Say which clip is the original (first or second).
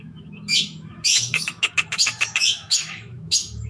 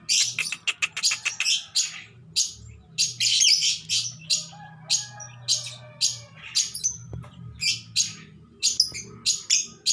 second